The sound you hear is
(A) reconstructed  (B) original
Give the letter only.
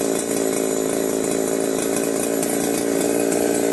B